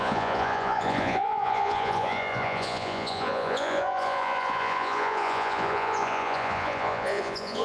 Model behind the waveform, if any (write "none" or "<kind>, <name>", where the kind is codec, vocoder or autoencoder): vocoder, Vocos